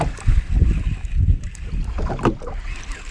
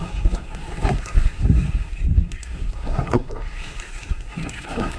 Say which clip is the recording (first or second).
first